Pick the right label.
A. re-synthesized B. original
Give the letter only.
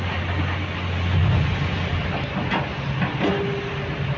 B